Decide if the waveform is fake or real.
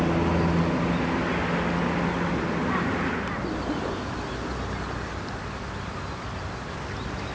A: real